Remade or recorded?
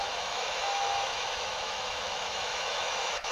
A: remade